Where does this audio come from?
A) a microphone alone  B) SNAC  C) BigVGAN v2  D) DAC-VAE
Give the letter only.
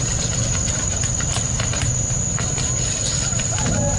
A